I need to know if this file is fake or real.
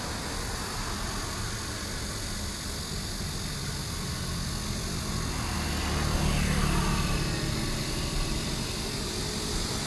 real